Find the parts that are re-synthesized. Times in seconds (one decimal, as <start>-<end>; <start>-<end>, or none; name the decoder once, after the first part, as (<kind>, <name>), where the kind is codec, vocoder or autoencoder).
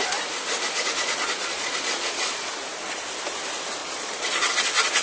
1.0-2.5 (vocoder, Vocos); 3.8-4.5